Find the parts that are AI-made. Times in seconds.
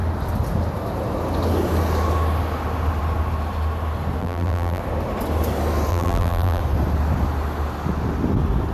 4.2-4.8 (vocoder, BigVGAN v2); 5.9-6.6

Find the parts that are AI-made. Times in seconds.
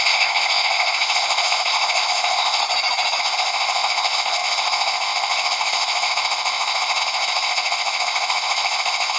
0.0-2.6 (codec, ZipCodec); 3.2-9.2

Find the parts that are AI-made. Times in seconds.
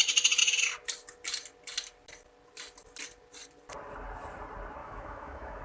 4.8-5.6 (autoencoder, DAC-VAE)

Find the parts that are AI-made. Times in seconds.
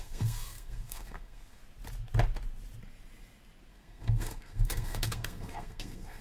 0.0-1.6 (codec, SNAC); 3.7-6.2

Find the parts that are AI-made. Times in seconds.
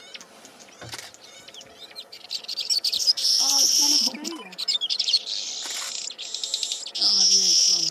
0.5-5.2 (vocoder, BigVGAN v2)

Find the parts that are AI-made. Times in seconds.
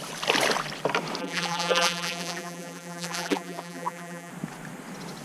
1.2-4.3 (vocoder, BigVGAN v2)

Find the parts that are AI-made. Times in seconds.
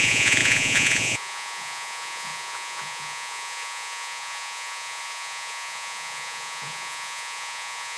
0.0-8.0 (vocoder, Vocos)